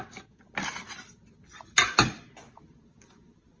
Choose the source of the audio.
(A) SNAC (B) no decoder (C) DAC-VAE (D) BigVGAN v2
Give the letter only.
B